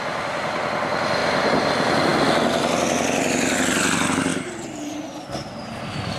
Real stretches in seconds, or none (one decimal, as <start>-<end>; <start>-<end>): 0.0-1.2; 1.7-4.3; 4.9-6.2